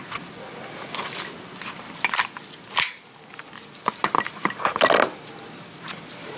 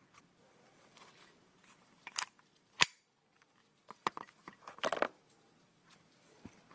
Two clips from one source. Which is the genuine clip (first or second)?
first